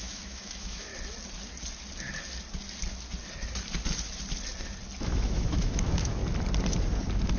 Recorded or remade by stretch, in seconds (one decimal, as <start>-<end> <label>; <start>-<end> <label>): 0.0-0.9 remade; 0.9-5.0 recorded; 5.0-6.2 remade; 6.2-7.4 recorded